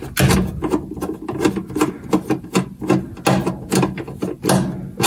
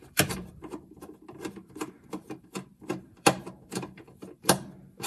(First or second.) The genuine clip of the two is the first